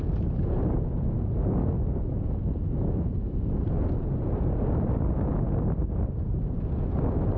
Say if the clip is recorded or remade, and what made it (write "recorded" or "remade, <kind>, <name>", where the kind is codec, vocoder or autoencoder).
recorded